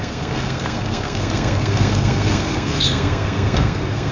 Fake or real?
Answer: fake